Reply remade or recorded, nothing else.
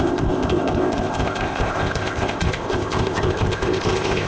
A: remade